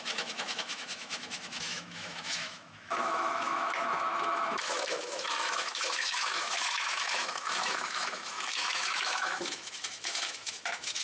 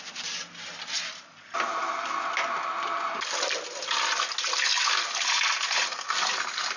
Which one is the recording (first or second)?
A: second